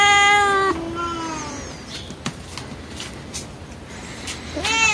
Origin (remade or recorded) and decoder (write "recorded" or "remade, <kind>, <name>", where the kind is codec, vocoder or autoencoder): recorded